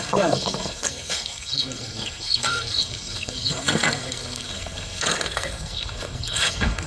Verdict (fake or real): fake